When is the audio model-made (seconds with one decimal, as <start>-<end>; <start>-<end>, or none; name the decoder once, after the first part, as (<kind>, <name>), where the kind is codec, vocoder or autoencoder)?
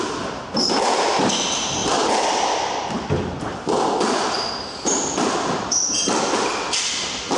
none